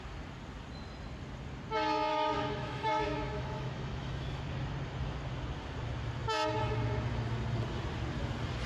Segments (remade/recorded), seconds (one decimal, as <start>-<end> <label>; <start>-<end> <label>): 0.0-2.1 recorded; 2.1-4.4 remade; 4.4-8.7 recorded